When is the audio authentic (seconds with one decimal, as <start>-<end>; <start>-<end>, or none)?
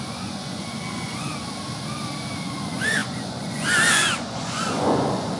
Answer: 1.3-2.4